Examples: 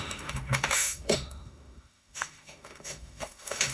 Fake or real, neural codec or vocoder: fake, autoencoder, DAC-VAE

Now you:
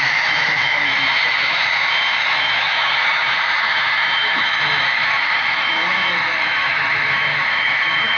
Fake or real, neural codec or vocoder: fake, autoencoder, DAC-VAE